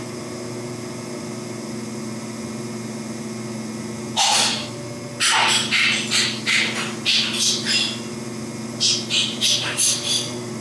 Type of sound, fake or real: real